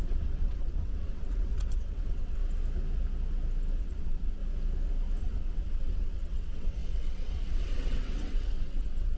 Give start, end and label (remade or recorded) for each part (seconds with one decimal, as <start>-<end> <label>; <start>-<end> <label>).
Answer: 0.0-2.4 remade; 2.4-3.8 recorded; 3.8-4.4 remade; 4.4-5.2 recorded; 5.2-9.2 remade